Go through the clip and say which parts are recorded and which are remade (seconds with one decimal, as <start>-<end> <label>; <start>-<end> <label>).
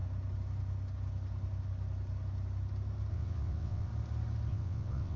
0.0-3.1 recorded; 3.1-3.9 remade; 3.9-4.5 recorded; 4.5-5.2 remade